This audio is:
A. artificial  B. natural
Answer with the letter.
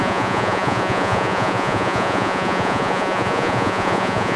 A